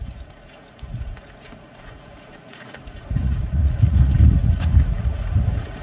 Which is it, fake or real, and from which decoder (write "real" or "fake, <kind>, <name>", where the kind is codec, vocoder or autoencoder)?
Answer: fake, vocoder, Vocos